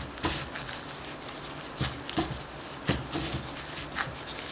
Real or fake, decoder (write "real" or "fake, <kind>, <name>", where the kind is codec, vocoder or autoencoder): real